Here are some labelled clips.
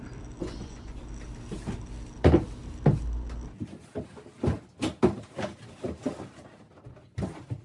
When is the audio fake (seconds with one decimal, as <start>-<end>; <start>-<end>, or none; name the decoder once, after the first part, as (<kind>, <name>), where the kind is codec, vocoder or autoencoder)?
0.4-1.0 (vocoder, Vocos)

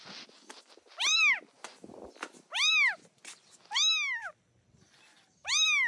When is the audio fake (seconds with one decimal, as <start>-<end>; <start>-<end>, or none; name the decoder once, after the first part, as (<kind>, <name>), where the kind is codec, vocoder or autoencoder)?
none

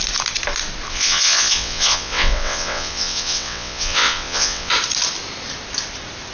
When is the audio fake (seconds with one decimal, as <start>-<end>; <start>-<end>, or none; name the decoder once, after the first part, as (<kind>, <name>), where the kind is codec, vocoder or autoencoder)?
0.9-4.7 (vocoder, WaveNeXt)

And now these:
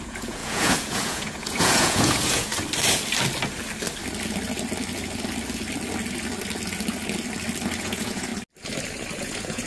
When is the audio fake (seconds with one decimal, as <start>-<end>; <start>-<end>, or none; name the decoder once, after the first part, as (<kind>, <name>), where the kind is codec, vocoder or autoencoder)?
0.0-2.5 (vocoder, Vocos); 7.8-8.3; 9.2-9.7

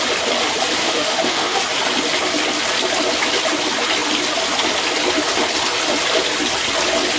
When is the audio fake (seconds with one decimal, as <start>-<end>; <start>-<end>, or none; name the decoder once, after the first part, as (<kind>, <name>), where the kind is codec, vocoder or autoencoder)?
0.8-1.6 (autoencoder, DAC-VAE)

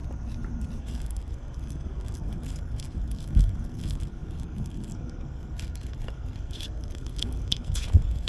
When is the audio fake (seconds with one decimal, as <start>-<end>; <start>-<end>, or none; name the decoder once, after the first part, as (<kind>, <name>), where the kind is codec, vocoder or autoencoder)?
0.8-8.3 (codec, SNAC)